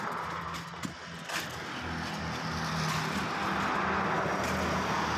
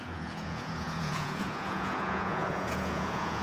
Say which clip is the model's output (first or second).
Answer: second